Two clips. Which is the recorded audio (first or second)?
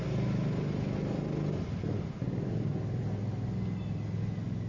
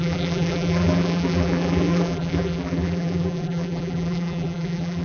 first